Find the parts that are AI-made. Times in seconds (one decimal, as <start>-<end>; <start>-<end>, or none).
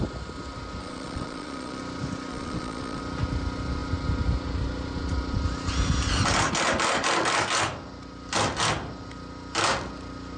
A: 0.8-1.8; 2.3-3.0